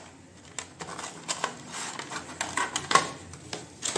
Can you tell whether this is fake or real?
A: real